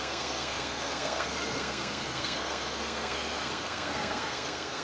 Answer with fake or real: fake